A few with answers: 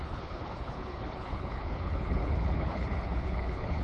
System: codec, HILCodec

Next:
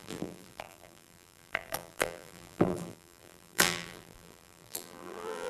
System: vocoder, BigVGAN v2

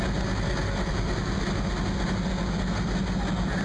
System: none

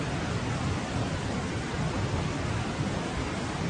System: none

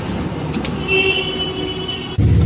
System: none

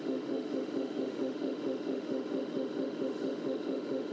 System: autoencoder, DAC-VAE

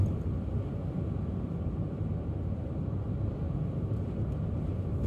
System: none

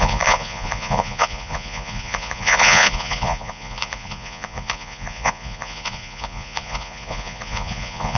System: vocoder, Vocos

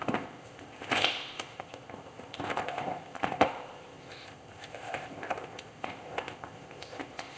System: codec, ZipCodec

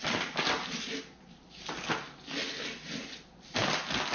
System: none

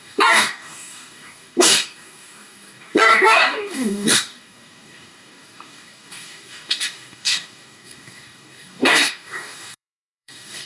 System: codec, DAC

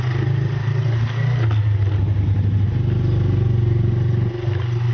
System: none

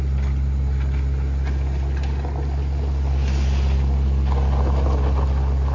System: none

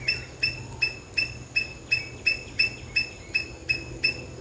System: none